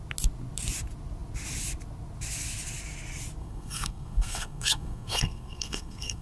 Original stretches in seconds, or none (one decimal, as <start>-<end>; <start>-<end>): 0.0-3.4